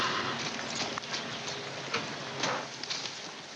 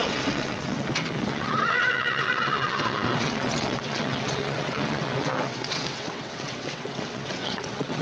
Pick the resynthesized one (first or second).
second